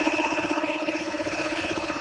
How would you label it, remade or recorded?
remade